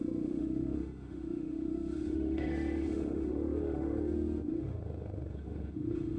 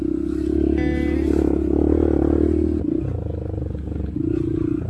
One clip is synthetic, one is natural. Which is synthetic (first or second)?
first